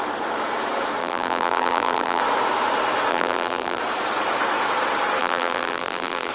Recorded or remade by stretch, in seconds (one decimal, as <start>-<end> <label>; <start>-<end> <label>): 0.0-1.0 recorded; 1.0-2.2 remade; 2.2-3.1 recorded; 3.1-3.8 remade; 3.8-5.2 recorded; 5.2-6.3 remade